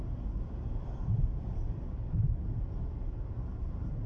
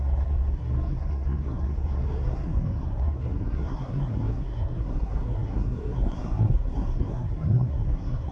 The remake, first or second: second